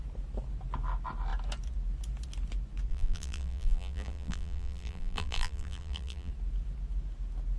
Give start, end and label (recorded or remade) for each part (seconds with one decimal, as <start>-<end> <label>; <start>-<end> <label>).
0.0-2.9 recorded; 2.9-6.3 remade; 6.3-7.6 recorded